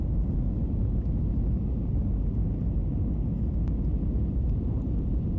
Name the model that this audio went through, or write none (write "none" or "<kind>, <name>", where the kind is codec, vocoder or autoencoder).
none